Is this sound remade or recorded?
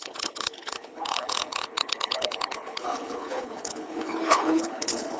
remade